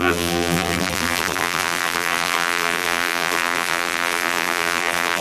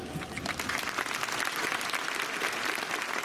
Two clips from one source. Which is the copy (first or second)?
first